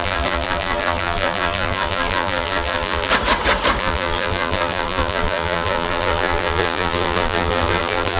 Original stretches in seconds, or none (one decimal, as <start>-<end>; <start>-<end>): 3.1-3.8